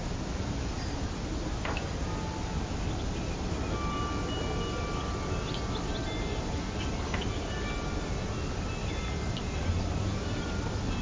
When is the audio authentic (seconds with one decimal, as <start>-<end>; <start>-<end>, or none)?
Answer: 0.0-11.0